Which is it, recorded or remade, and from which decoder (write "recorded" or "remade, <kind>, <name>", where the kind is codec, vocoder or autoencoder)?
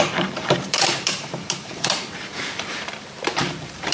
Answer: remade, vocoder, BigVGAN v2